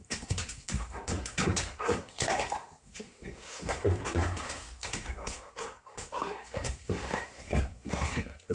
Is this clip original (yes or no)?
no